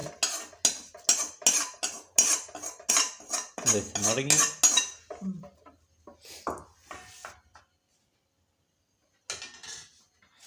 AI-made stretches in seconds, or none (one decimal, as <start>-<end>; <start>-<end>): none